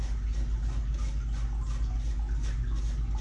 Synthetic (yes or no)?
no